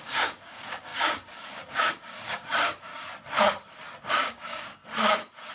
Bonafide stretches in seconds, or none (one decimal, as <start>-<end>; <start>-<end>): 2.9-4.1; 4.8-5.5